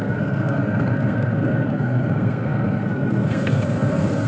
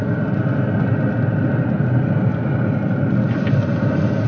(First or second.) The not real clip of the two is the first